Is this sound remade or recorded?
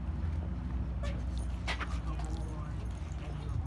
recorded